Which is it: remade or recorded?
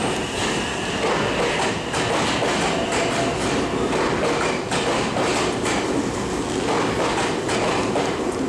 recorded